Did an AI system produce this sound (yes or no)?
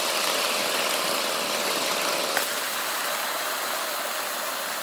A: no